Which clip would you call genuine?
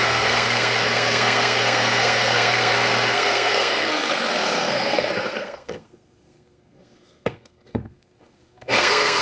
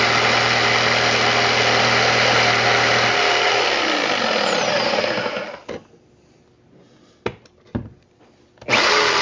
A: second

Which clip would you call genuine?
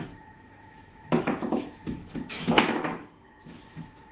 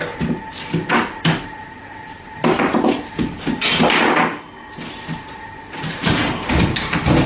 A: second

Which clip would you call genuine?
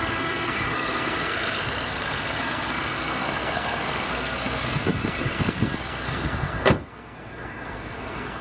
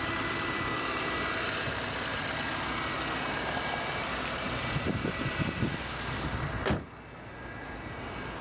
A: second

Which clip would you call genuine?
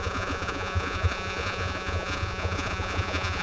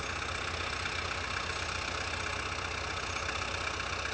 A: second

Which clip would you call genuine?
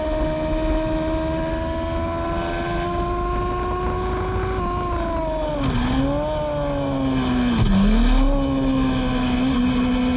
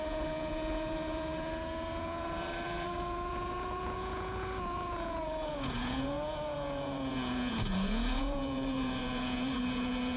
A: first